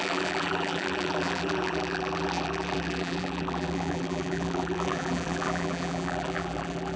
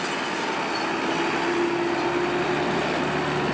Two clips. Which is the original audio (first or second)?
second